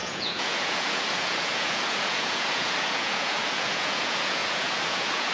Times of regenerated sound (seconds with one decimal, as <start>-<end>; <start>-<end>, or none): 0.0-5.3